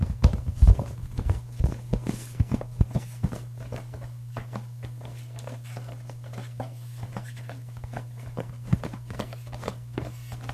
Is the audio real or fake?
fake